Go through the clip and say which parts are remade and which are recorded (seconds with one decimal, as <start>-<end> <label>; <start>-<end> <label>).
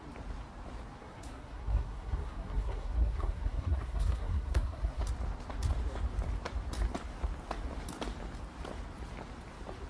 0.0-1.0 recorded; 1.0-5.0 remade; 5.0-9.9 recorded